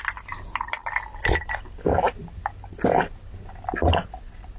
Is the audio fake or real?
real